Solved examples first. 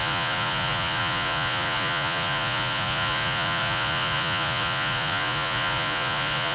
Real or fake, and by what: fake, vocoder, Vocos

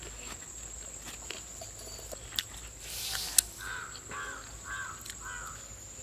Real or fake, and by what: real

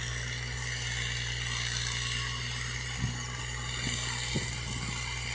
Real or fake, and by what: real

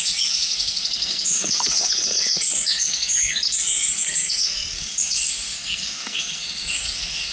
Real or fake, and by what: fake, codec, SNAC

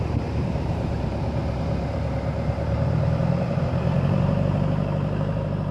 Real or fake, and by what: fake, vocoder, BigVGAN v2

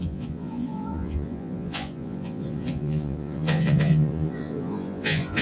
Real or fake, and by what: fake, vocoder, Vocos